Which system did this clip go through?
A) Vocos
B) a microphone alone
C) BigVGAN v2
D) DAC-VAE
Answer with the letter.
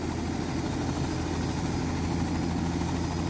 B